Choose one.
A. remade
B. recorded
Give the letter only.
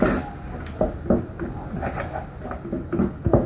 B